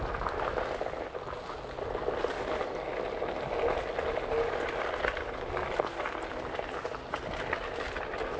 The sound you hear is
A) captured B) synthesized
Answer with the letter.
A